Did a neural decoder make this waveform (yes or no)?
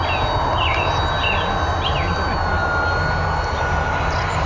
no